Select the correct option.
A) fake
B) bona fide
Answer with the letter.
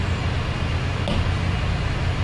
B